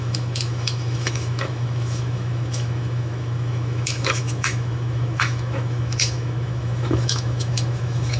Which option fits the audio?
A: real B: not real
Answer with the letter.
B